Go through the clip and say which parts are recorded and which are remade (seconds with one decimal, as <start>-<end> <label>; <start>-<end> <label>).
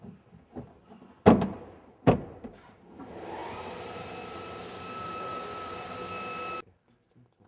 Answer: 0.0-3.4 recorded; 3.4-5.8 remade; 5.8-7.5 recorded